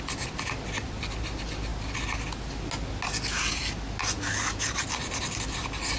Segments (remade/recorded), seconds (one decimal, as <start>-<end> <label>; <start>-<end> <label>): 0.0-6.0 recorded